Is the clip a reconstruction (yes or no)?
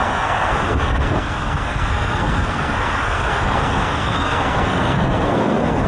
yes